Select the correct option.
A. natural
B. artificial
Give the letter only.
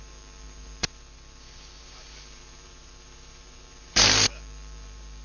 B